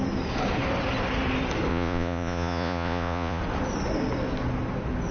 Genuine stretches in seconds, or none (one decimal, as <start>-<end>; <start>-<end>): 0.0-1.7; 3.4-5.1